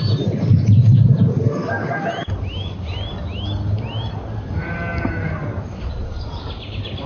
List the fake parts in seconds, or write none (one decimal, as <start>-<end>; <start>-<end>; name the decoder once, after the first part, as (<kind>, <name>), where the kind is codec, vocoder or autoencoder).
none